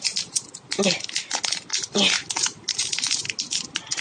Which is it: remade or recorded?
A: recorded